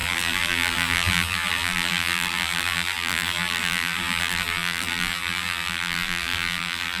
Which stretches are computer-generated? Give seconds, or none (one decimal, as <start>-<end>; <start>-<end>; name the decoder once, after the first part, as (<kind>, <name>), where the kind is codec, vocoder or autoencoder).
0.0-7.0 (vocoder, BigVGAN v2)